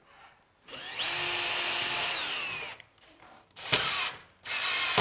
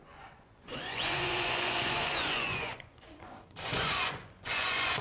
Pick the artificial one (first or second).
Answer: second